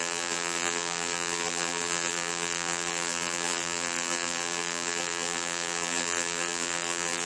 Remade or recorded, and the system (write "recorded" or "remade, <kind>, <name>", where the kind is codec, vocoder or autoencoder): remade, vocoder, BigVGAN v2